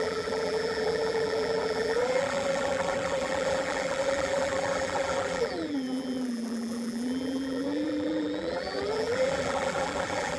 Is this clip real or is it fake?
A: fake